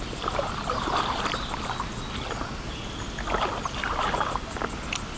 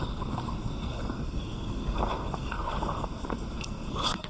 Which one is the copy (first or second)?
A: second